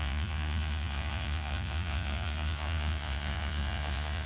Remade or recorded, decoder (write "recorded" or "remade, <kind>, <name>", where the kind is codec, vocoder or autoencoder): remade, vocoder, Vocos